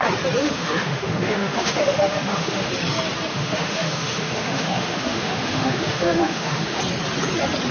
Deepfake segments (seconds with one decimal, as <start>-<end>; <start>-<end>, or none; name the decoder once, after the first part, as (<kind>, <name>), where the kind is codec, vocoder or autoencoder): 0.4-2.7 (autoencoder, DAC-VAE); 3.3-6.8